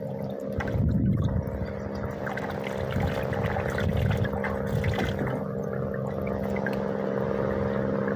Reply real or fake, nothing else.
real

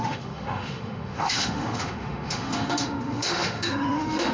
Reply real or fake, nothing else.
fake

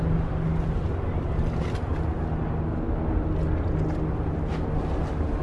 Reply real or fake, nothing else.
real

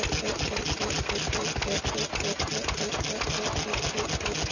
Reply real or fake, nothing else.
real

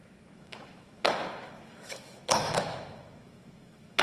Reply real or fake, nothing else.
fake